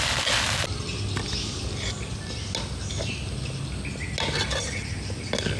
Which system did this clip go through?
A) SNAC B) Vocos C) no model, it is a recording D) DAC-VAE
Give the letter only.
C